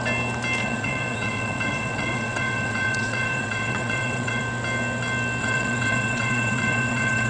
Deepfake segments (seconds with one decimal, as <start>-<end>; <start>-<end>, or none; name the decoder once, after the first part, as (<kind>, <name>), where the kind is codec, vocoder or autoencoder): 0.6-4.4 (vocoder, WaveNeXt); 5.4-7.3